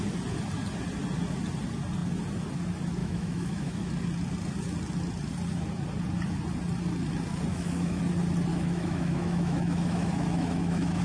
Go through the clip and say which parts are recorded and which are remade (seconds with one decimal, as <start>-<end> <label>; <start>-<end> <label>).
0.0-3.0 recorded; 3.0-3.9 remade; 3.9-7.5 recorded; 7.5-8.0 remade; 8.0-8.5 recorded; 8.5-11.0 remade